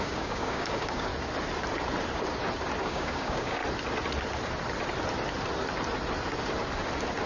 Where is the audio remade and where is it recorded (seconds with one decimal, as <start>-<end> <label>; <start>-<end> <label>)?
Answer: 0.0-1.1 remade; 1.1-2.8 recorded; 2.8-3.6 remade; 3.6-7.3 recorded